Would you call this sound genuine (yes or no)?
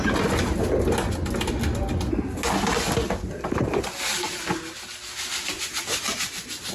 yes